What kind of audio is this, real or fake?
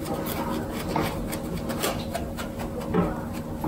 real